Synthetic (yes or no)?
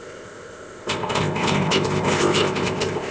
yes